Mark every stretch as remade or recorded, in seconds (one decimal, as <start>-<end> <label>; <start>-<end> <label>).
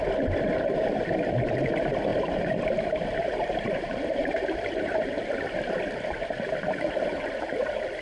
0.0-2.1 recorded; 2.1-5.3 remade; 5.3-8.0 recorded